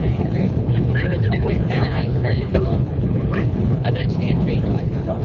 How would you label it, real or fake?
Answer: fake